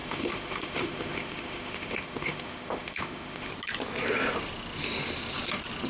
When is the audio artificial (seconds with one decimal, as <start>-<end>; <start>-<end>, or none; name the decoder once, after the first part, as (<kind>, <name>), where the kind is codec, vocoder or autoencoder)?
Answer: 0.0-3.5 (autoencoder, DAC-VAE)